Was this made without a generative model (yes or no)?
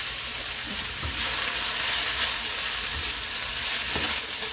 yes